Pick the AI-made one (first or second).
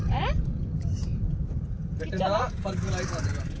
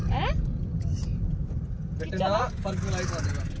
first